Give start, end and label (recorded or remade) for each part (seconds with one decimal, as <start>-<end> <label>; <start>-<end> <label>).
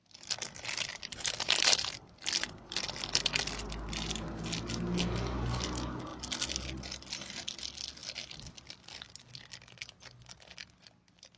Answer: 0.0-0.9 recorded; 0.9-1.9 remade; 1.9-11.4 recorded